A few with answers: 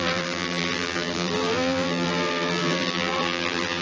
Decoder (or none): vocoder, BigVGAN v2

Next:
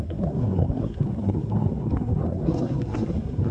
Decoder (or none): codec, SNAC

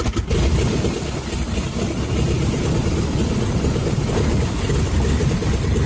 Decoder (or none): none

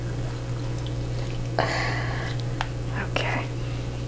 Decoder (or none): none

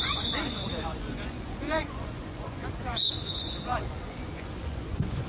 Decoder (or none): vocoder, Vocos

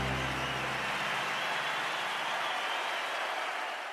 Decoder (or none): none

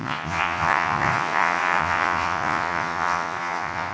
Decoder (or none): vocoder, Vocos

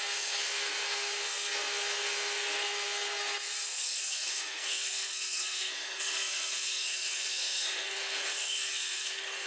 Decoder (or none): codec, SNAC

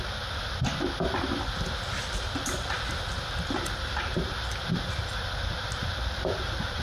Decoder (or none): vocoder, BigVGAN v2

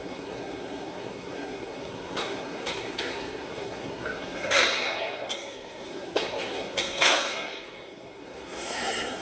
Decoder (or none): codec, SNAC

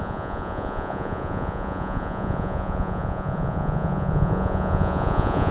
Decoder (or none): vocoder, Vocos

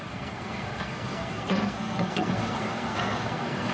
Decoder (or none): codec, SNAC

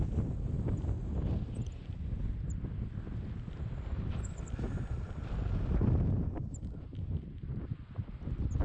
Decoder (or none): none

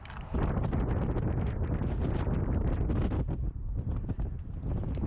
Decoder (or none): none